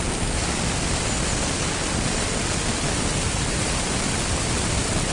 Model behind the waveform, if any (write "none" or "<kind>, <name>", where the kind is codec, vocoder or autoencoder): none